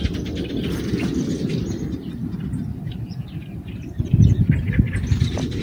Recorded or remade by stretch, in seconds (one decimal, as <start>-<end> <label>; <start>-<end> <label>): 0.0-1.1 remade; 1.1-2.6 recorded; 2.6-5.6 remade